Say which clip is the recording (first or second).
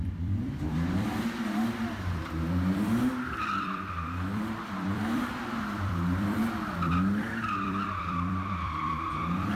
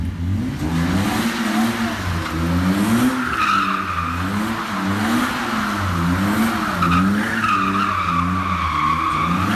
second